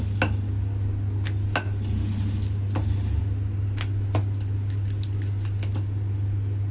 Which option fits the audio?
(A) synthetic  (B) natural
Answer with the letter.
B